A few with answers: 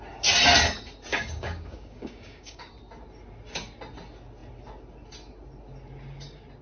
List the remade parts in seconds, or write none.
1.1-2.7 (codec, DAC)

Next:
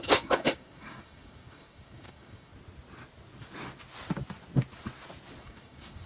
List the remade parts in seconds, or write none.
0.0-2.5 (codec, DAC); 5.4-6.1

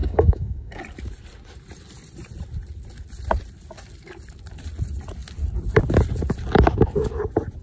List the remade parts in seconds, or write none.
0.0-0.8 (codec, DAC)

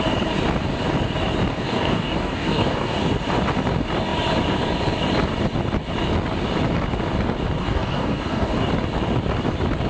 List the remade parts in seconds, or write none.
1.5-3.0 (codec, DAC); 7.6-8.7

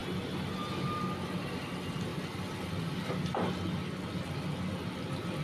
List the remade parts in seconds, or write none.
none

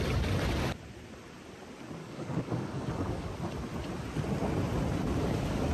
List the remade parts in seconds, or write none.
2.0-3.3 (codec, DAC)

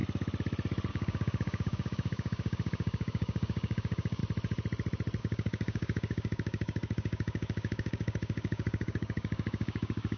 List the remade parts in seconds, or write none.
0.9-4.2 (codec, DAC); 5.2-10.2